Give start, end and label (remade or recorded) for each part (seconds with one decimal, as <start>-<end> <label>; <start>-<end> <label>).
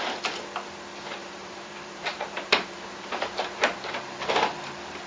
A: 0.0-1.2 recorded; 1.2-4.3 remade; 4.3-5.1 recorded